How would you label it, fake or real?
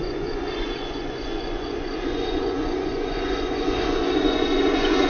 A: fake